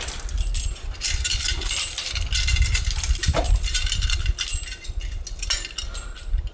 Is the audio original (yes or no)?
yes